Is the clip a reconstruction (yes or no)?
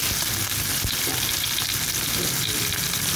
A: no